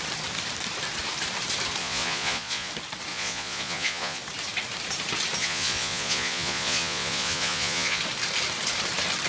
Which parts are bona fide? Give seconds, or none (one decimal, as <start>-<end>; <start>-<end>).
0.0-1.8; 2.7-3.1; 4.2-5.4; 8.0-9.3